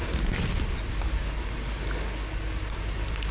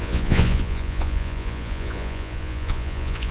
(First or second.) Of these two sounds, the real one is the first